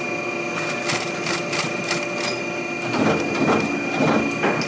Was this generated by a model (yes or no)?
no